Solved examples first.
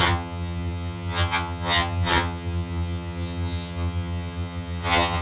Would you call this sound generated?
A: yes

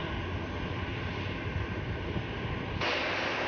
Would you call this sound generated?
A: no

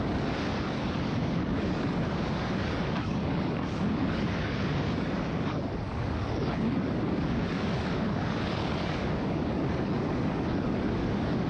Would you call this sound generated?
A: yes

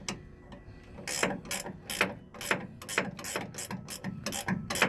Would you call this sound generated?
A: no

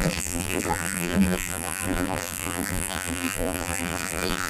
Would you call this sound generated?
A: yes